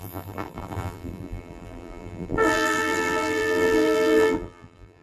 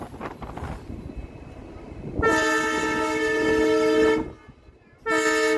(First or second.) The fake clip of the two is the first